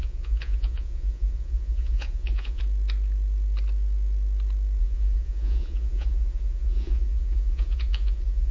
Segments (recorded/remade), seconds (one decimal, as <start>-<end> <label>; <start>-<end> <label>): 0.0-2.6 remade; 2.6-4.8 recorded; 4.8-8.5 remade